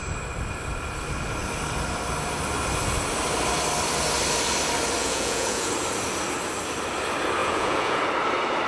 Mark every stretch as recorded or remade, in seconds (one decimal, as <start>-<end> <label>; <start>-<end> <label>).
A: 0.0-5.0 recorded; 5.0-5.7 remade; 5.7-7.4 recorded; 7.4-8.0 remade; 8.0-8.7 recorded